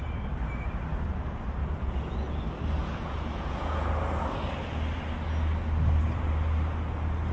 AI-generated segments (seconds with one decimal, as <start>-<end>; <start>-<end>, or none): 1.6-2.4; 2.8-3.9